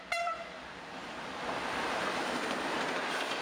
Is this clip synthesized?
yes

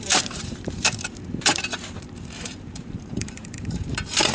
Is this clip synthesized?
yes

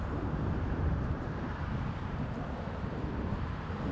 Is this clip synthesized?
yes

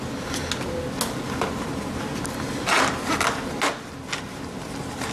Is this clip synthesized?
no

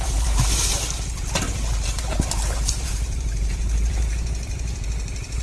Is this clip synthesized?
yes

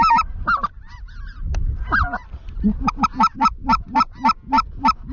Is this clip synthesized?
yes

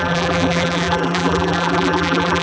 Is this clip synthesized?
yes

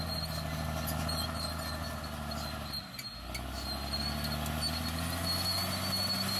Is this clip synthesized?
no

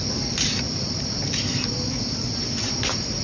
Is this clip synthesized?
yes